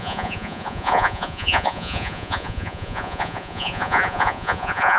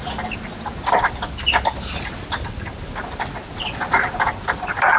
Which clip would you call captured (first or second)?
second